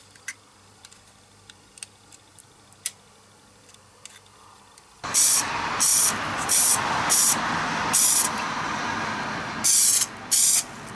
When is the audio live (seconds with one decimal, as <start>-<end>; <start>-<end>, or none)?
0.0-11.0